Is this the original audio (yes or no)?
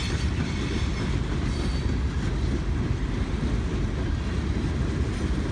yes